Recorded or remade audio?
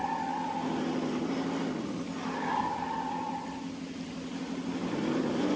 recorded